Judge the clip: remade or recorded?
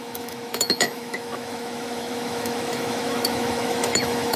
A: remade